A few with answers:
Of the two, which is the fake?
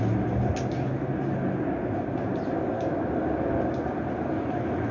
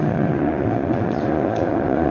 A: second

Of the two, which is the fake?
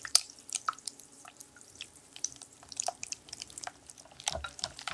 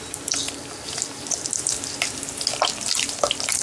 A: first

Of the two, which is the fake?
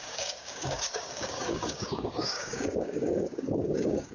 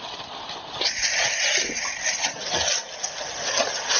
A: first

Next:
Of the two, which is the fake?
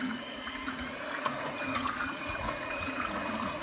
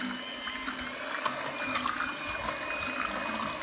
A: first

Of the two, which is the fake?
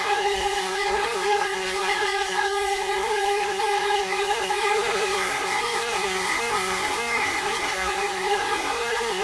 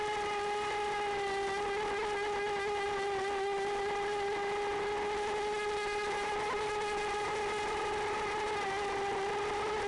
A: first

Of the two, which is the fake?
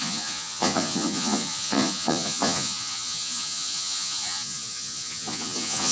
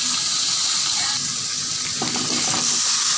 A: first